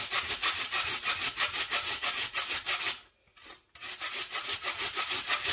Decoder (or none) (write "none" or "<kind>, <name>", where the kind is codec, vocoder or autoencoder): none